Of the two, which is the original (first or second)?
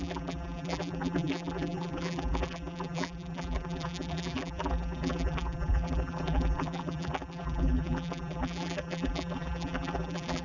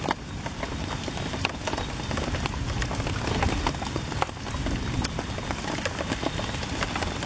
second